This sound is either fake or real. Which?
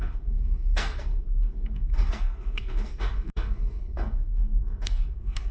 fake